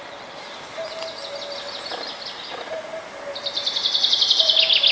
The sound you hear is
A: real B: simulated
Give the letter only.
A